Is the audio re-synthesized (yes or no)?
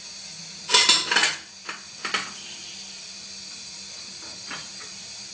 no